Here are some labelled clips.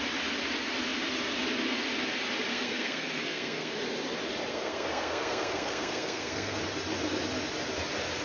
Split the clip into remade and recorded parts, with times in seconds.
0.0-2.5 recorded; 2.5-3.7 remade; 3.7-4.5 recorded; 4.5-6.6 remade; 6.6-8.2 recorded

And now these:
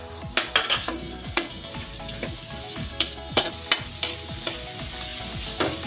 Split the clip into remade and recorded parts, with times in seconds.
0.0-0.6 recorded; 0.6-1.7 remade; 1.7-2.8 recorded; 2.8-3.5 remade; 3.5-5.9 recorded

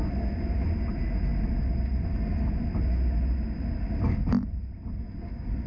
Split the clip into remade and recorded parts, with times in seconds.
0.0-5.7 recorded

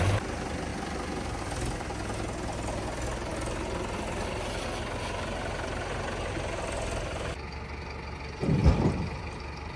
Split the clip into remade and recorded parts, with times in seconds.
0.0-9.8 recorded

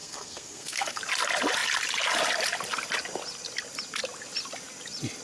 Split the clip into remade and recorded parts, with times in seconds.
0.0-1.0 remade; 1.0-5.2 recorded

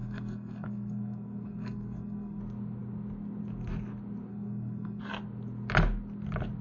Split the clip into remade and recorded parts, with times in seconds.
0.0-2.4 remade; 2.4-4.3 recorded; 4.3-5.0 remade; 5.0-6.6 recorded